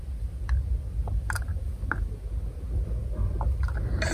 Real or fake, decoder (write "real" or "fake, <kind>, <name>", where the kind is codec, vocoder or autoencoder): real